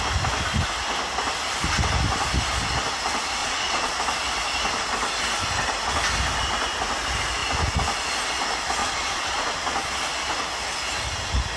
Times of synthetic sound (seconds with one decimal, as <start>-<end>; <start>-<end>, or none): 3.4-4.0; 8.8-9.9